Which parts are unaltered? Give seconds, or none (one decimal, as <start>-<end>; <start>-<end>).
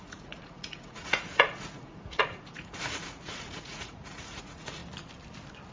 4.8-5.7